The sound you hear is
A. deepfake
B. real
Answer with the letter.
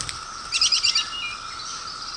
B